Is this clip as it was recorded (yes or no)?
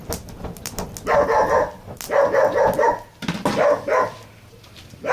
yes